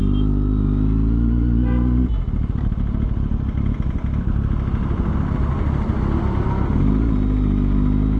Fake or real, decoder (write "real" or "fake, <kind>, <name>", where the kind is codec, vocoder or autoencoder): real